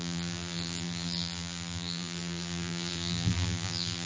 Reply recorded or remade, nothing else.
remade